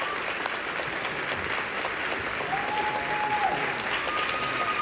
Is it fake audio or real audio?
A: real